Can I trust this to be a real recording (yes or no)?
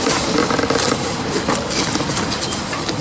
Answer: yes